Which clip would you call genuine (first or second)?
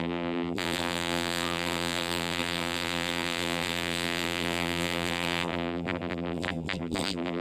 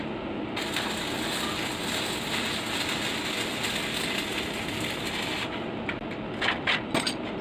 second